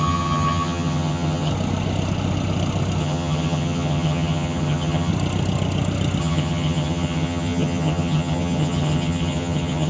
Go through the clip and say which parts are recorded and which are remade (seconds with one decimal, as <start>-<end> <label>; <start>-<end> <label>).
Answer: 0.0-1.5 remade; 1.5-3.0 recorded; 3.0-5.1 remade; 5.1-6.2 recorded; 6.2-9.9 remade